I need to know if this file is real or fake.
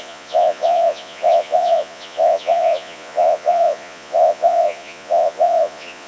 fake